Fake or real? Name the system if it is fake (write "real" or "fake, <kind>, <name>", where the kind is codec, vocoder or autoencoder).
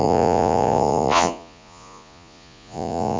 fake, vocoder, Vocos